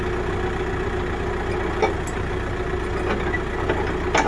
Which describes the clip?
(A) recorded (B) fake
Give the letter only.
A